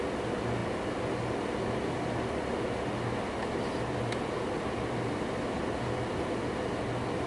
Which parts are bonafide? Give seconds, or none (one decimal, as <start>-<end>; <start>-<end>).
0.0-7.3